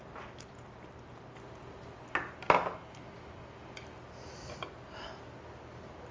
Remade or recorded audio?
recorded